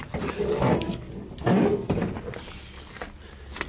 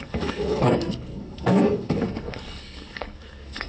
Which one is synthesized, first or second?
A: second